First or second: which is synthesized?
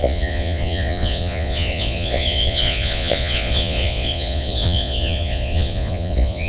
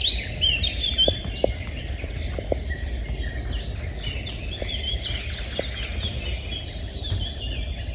first